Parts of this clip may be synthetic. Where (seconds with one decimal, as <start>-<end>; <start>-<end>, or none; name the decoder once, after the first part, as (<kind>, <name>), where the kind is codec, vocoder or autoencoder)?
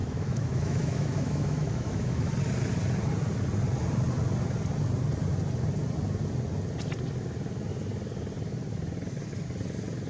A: 0.0-2.3 (autoencoder, DAC-VAE)